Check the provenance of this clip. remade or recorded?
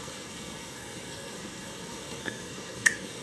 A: remade